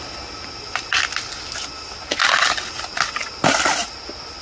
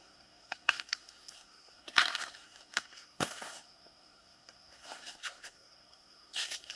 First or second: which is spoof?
second